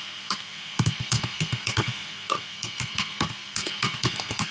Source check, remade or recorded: remade